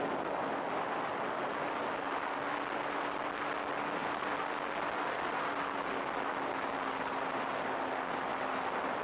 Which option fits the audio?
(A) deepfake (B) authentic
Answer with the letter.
B